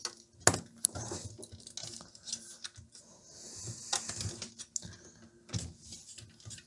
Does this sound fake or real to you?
real